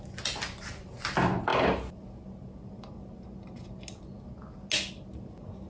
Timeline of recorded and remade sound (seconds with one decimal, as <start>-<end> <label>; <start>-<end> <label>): 0.0-5.7 recorded